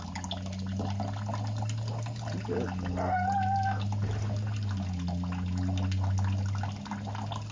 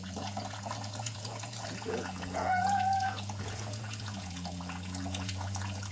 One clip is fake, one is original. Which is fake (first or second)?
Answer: second